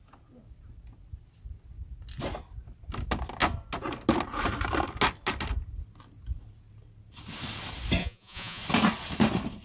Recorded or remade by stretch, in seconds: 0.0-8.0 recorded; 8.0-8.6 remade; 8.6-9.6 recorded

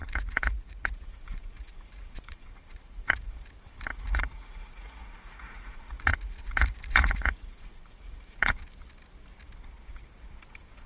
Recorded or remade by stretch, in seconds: 0.0-3.3 remade; 3.3-3.9 recorded; 3.9-8.6 remade; 8.6-10.9 recorded